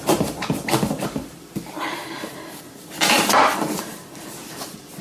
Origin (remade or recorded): remade